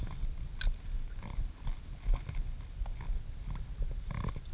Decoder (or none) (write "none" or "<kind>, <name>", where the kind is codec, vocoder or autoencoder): none